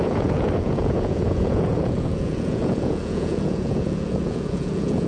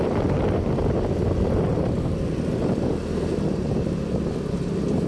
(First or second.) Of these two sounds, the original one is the second